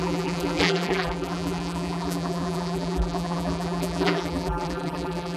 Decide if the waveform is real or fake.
fake